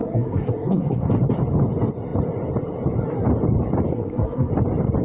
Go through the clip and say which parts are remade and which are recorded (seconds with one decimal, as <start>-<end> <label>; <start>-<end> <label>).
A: 0.0-1.1 remade; 1.1-3.9 recorded; 3.9-4.5 remade; 4.5-5.0 recorded